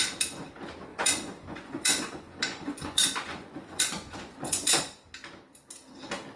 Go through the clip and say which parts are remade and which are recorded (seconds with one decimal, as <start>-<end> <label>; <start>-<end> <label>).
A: 0.0-0.9 recorded; 0.9-4.7 remade; 4.7-6.4 recorded